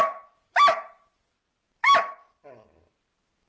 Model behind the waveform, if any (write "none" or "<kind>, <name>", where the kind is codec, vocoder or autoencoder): none